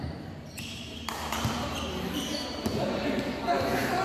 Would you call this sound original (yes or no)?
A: no